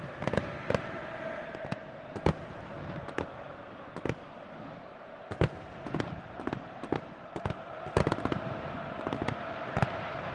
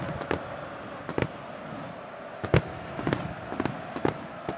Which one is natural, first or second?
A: second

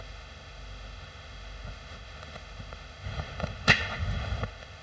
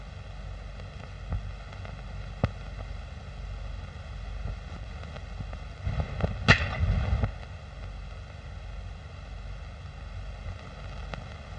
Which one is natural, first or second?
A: second